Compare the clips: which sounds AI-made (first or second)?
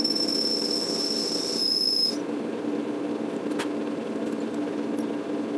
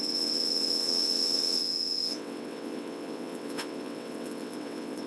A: second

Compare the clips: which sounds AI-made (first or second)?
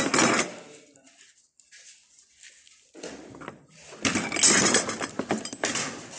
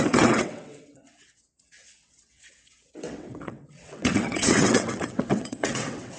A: second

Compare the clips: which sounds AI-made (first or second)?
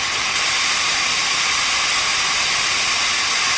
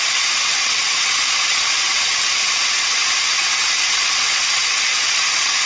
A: second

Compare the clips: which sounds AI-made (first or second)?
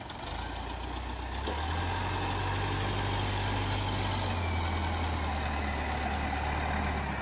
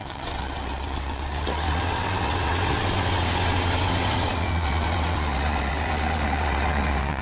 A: second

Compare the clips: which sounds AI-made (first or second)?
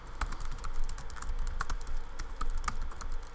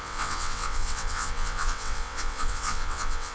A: second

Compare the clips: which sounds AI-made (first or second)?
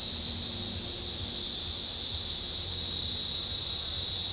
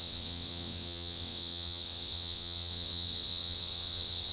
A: second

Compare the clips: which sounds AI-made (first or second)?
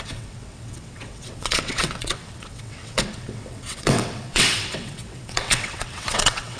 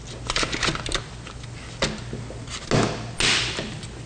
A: first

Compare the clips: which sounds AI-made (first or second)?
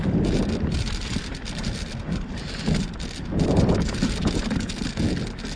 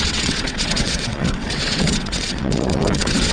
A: second